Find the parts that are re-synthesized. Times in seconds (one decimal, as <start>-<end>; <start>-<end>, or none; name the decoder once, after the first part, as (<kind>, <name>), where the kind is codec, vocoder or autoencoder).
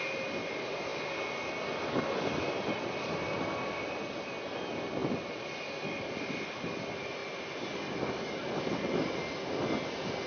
none